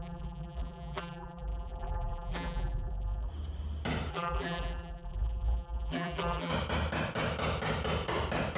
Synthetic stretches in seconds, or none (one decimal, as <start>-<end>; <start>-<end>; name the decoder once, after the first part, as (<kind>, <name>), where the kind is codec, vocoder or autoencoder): 0.0-3.3 (vocoder, BigVGAN v2); 4.1-6.5